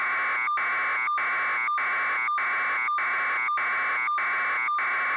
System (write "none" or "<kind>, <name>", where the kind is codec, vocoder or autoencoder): none